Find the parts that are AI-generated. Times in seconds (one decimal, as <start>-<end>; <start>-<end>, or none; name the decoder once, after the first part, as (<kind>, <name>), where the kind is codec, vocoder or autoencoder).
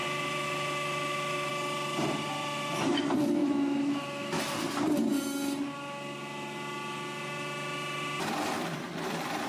0.0-1.5 (autoencoder, DAC-VAE); 3.4-4.4